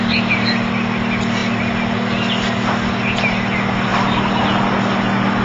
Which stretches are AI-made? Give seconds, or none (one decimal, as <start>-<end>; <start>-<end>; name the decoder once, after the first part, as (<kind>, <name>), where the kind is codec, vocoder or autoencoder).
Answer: none